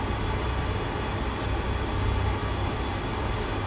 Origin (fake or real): real